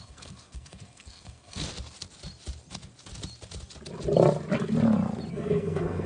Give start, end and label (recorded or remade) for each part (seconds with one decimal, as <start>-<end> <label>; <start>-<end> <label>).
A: 0.0-1.6 remade; 1.6-5.3 recorded; 5.3-6.1 remade